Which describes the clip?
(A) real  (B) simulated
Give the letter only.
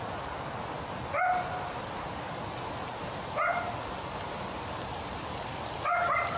A